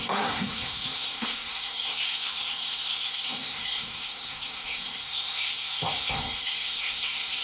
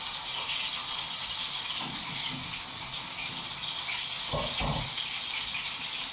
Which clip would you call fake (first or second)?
first